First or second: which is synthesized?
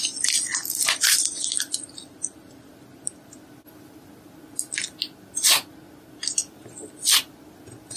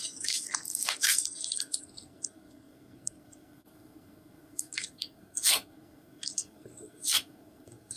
second